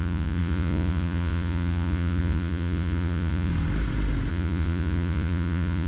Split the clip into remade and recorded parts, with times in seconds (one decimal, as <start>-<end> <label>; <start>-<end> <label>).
0.0-3.5 remade; 3.5-4.3 recorded; 4.3-5.9 remade

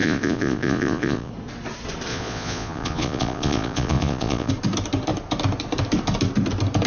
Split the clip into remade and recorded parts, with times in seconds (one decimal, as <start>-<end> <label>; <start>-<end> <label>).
0.0-1.3 remade; 1.3-2.1 recorded; 2.1-4.5 remade; 4.5-6.9 recorded

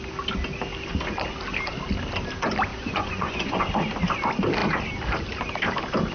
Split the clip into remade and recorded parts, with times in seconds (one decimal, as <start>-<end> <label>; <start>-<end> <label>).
0.0-2.7 recorded; 2.7-3.6 remade; 3.6-6.1 recorded

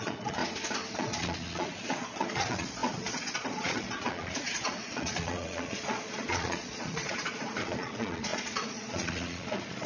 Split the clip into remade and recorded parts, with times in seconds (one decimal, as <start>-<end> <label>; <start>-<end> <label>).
0.0-0.4 remade; 0.4-0.9 recorded; 0.9-9.9 remade